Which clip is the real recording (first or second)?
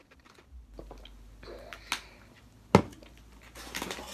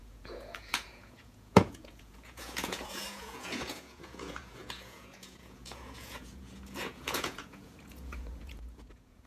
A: first